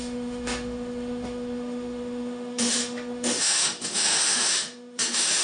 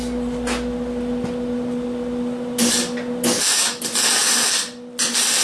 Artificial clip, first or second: first